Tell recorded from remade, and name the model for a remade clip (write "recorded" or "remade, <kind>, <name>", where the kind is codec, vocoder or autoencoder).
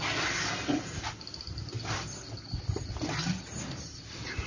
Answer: recorded